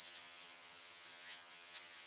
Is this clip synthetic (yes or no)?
yes